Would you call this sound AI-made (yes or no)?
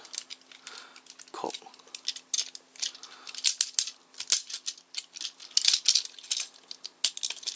no